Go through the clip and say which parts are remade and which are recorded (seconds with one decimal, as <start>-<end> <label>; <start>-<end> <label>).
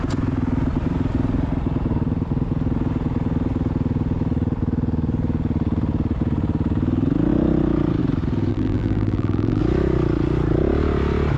0.0-8.5 recorded; 8.5-9.6 remade; 9.6-11.4 recorded